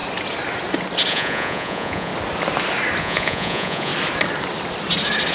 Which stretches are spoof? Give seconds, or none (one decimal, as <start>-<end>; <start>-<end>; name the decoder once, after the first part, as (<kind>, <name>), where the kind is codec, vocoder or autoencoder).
1.1-2.1 (vocoder, Vocos); 3.0-3.9